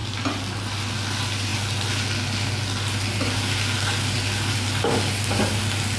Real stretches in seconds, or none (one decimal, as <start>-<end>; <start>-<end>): 0.0-6.0